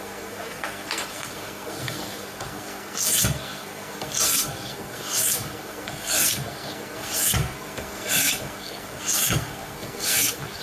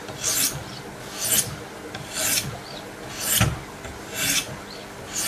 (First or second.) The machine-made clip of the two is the first